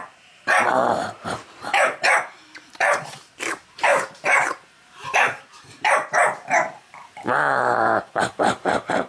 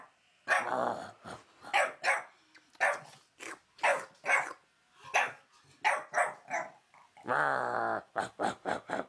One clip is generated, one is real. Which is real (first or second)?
second